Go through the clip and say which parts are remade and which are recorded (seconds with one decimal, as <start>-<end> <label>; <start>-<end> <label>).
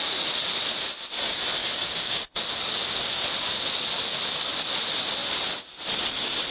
0.0-1.6 recorded; 1.6-2.2 remade; 2.2-6.5 recorded